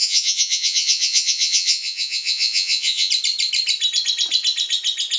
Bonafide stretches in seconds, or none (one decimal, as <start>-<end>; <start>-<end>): 3.1-5.2